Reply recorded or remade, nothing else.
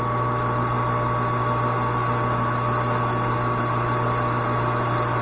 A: recorded